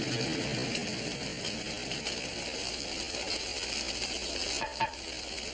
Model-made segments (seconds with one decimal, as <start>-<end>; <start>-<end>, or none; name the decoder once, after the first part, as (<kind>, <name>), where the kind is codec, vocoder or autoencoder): none